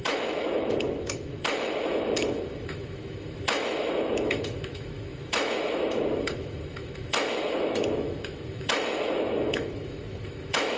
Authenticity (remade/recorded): remade